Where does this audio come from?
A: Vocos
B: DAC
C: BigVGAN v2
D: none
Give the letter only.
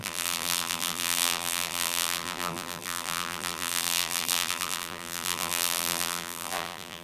C